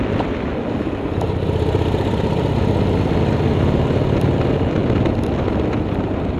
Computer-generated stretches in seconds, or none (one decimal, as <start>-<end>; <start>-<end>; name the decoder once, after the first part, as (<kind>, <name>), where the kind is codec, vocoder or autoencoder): none